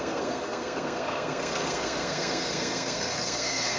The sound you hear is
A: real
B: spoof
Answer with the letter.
B